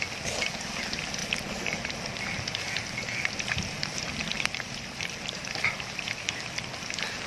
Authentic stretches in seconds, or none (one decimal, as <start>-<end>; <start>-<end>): 0.0-4.2; 5.4-7.3